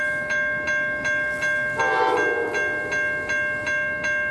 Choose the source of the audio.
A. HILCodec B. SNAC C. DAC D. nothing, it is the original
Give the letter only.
D